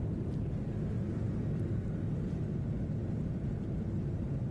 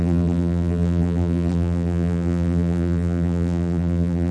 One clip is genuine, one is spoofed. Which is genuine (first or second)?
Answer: first